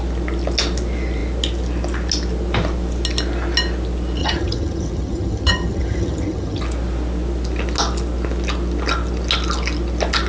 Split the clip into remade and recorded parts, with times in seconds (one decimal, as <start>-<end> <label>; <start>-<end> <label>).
0.0-4.2 recorded; 4.2-6.6 remade; 6.6-10.3 recorded